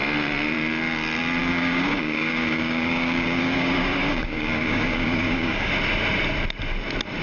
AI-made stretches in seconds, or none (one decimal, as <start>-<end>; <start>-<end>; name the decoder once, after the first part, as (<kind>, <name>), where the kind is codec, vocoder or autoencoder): 1.4-5.7 (codec, DAC)